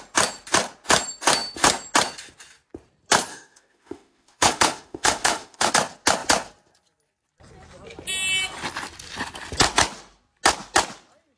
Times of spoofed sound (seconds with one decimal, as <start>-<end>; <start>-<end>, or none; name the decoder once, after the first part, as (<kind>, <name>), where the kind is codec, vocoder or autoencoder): 3.3-5.7 (autoencoder, DAC-VAE)